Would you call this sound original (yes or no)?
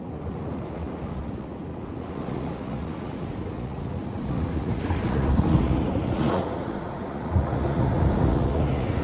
no